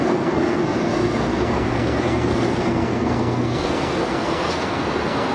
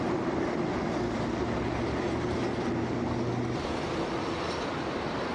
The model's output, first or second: first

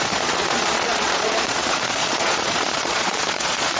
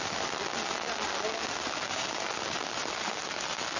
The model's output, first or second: first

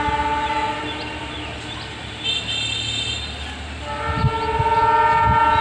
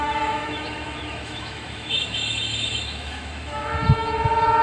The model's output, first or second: second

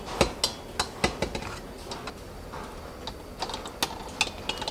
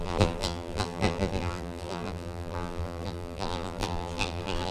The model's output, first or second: second